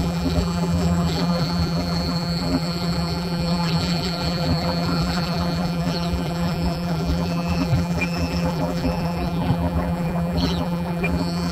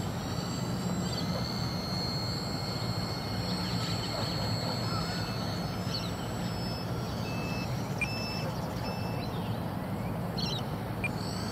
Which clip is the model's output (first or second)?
first